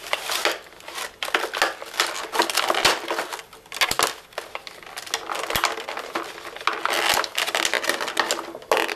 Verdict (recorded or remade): recorded